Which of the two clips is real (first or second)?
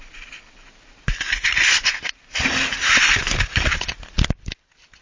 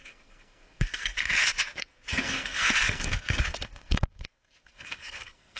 first